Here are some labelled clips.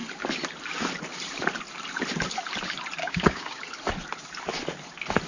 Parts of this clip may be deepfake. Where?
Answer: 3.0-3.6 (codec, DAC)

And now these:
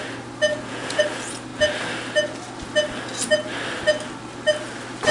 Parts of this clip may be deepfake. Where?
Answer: 0.5-1.0 (vocoder, Vocos)

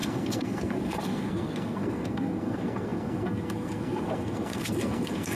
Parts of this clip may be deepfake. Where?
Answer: 0.0-5.4 (codec, SNAC)